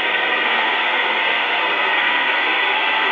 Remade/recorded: remade